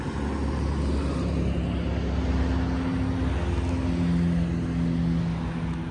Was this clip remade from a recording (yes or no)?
no